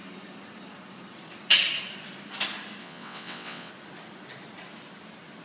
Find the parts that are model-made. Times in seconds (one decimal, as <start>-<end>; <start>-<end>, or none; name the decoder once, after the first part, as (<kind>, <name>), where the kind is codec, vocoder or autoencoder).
2.8-3.7 (vocoder, WaveNeXt)